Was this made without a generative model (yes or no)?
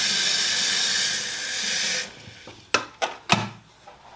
yes